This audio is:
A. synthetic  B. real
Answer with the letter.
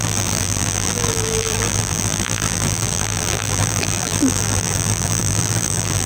A